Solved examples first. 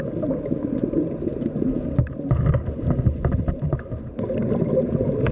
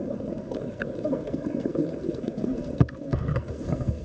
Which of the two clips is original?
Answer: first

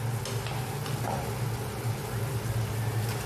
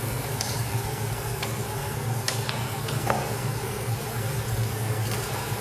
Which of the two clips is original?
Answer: first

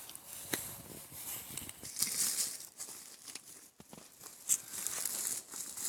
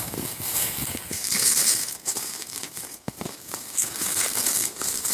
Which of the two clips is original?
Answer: first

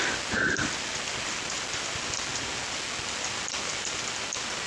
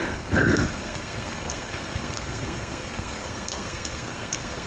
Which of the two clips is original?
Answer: first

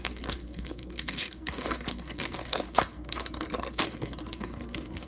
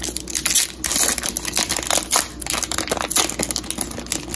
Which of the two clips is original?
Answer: second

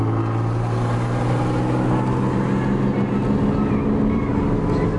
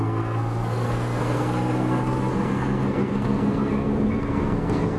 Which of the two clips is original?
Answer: first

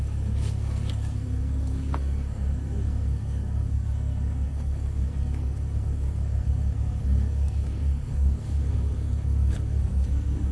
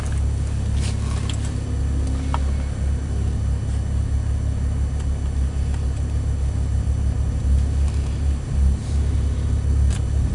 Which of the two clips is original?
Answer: second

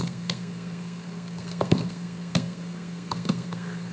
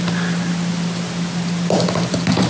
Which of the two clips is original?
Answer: second